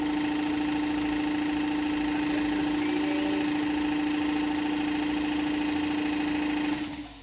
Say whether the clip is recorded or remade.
recorded